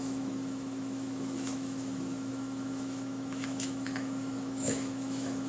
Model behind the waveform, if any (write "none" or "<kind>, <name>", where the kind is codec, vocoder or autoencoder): autoencoder, DAC-VAE